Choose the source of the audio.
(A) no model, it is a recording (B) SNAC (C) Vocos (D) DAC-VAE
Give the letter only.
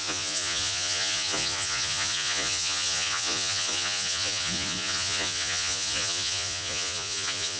C